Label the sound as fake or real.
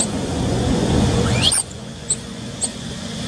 fake